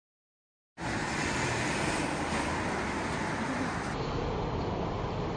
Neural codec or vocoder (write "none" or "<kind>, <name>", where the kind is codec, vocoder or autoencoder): none